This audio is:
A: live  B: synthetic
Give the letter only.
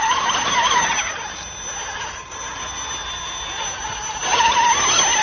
A